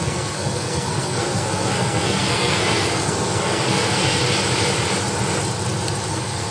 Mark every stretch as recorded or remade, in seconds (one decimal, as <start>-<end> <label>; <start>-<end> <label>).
0.0-4.2 remade; 4.2-6.1 recorded; 6.1-6.5 remade